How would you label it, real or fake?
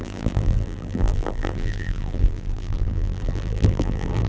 fake